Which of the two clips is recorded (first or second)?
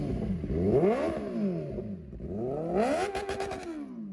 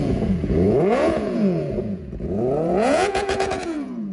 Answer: first